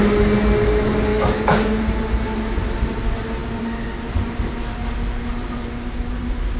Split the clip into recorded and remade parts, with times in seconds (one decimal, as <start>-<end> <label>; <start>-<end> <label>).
0.0-1.1 recorded; 1.1-1.8 remade; 1.8-6.6 recorded